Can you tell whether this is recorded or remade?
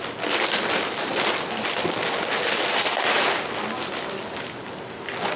recorded